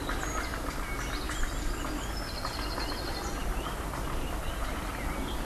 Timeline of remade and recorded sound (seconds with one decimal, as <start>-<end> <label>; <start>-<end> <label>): 0.0-5.5 recorded